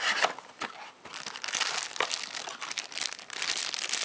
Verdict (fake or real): real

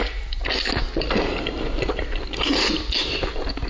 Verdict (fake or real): real